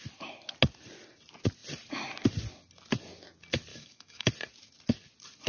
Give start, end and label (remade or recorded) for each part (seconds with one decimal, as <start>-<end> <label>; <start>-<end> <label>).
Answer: 0.0-3.7 recorded; 3.7-4.3 remade; 4.3-5.5 recorded